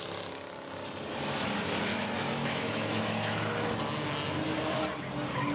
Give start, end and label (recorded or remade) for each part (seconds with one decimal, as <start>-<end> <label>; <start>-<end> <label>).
0.0-1.9 recorded; 1.9-3.8 remade; 3.8-5.5 recorded

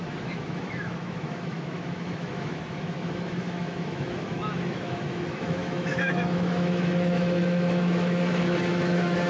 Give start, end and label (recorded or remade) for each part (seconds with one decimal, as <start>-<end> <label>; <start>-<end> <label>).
0.0-9.3 remade

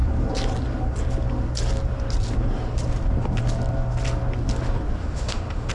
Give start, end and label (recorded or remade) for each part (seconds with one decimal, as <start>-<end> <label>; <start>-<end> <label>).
0.0-5.0 recorded; 5.0-5.7 remade

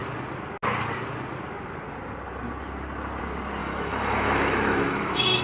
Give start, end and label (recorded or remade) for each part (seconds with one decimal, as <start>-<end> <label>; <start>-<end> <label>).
0.0-3.6 recorded; 3.6-5.4 remade

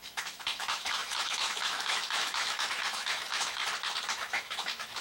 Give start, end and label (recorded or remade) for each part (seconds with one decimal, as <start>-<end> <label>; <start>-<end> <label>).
0.0-3.6 remade; 3.6-4.1 recorded; 4.1-5.0 remade

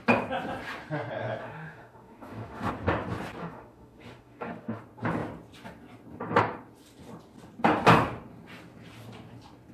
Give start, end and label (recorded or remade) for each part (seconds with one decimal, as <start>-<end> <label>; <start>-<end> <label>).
0.0-1.4 recorded; 1.4-2.7 remade; 2.7-3.4 recorded; 3.4-4.8 remade; 4.8-9.7 recorded